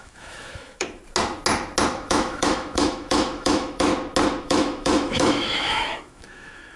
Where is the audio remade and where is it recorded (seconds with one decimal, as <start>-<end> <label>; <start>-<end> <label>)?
0.0-1.0 remade; 1.0-1.9 recorded; 1.9-3.9 remade; 3.9-4.4 recorded; 4.4-6.8 remade